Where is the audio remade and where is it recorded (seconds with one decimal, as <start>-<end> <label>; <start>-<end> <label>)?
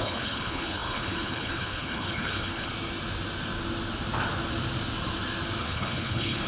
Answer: 0.0-2.7 remade; 2.7-5.6 recorded; 5.6-6.5 remade